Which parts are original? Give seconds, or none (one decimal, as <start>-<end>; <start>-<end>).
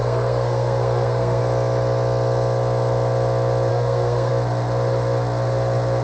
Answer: 1.4-3.7; 4.3-6.0